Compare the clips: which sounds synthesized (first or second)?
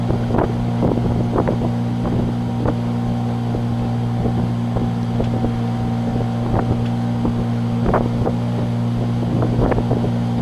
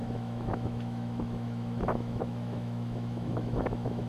second